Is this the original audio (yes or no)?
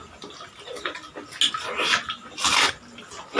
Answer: yes